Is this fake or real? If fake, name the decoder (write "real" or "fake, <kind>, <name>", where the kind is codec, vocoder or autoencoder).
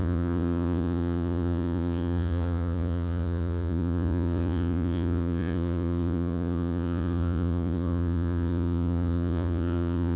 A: fake, vocoder, Vocos